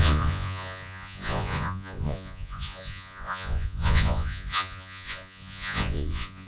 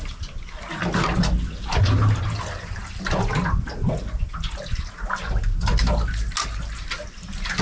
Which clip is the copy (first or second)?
first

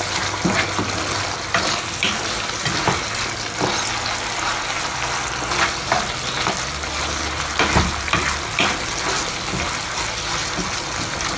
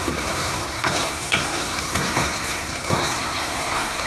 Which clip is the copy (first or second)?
second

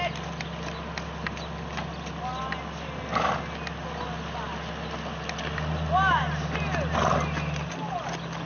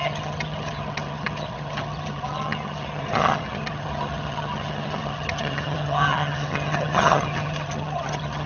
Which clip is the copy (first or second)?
second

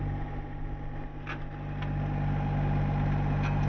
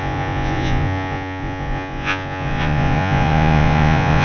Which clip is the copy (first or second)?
second